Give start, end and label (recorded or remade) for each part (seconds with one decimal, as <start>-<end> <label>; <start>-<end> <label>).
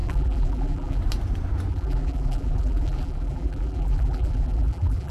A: 0.0-1.0 remade; 1.0-1.7 recorded; 1.7-5.1 remade